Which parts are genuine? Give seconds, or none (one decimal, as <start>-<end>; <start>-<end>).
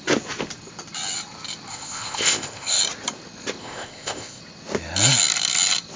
0.0-1.7; 2.8-3.6; 4.4-6.0